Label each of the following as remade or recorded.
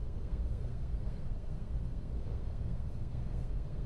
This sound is remade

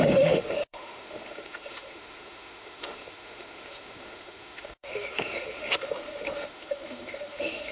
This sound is remade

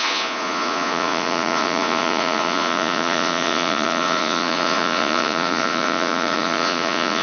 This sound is remade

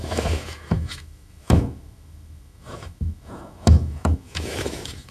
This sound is remade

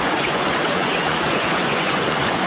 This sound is remade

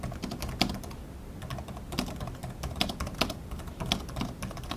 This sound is recorded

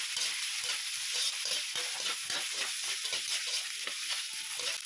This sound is recorded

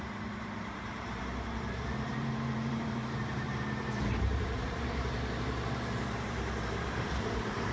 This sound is remade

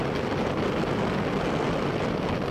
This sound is recorded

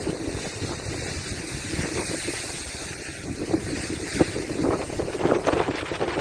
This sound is remade